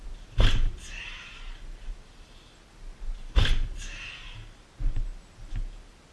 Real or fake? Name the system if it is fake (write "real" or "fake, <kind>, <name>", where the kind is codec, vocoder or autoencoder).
real